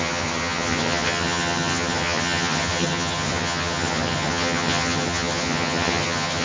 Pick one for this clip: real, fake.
fake